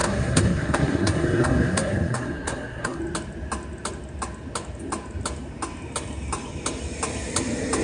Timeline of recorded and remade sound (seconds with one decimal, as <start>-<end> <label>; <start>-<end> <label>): 0.0-3.0 remade; 3.0-7.8 recorded